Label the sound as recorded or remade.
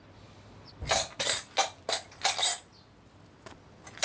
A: recorded